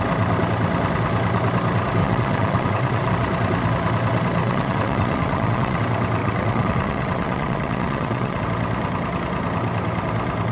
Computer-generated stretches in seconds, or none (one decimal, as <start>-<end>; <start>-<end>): 2.0-3.1; 4.4-5.8; 6.2-8.4